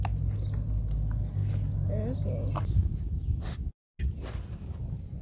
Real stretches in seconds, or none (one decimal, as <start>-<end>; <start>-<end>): 0.0-5.2